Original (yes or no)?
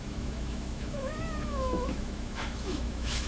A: no